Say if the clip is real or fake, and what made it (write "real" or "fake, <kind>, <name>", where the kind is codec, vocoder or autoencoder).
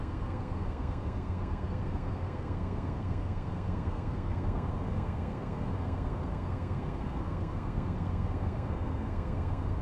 fake, codec, SNAC